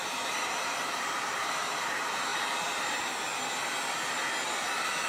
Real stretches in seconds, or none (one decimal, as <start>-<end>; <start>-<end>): 2.3-5.1